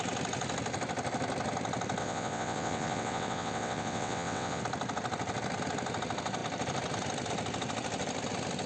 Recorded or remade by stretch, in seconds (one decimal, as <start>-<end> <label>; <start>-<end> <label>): 0.0-2.0 recorded; 2.0-4.6 remade; 4.6-8.7 recorded